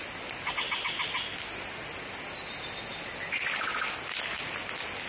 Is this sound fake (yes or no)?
no